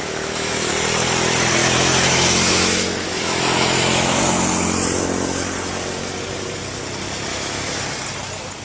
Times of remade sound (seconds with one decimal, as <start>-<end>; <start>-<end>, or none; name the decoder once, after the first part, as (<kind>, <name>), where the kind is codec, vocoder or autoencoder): 0.0-0.7 (autoencoder, DAC-VAE); 1.6-4.2; 7.3-7.8